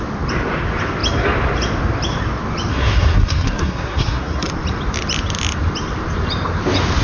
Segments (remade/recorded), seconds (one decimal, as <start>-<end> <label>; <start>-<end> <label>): 0.0-2.7 recorded; 2.7-4.5 remade; 4.5-7.0 recorded